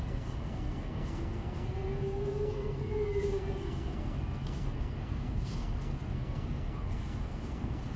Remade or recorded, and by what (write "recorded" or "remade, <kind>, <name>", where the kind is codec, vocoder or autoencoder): remade, codec, SNAC